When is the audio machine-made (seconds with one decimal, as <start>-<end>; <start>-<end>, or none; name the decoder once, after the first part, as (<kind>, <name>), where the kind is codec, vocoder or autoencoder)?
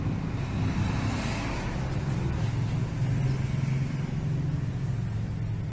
none